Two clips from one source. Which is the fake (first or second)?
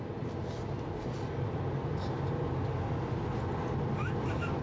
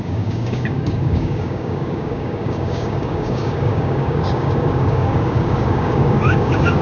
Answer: second